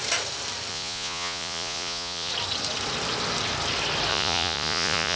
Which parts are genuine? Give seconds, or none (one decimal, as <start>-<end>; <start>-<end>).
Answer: 0.0-0.7; 2.3-4.1